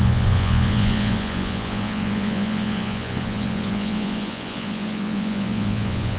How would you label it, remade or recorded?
remade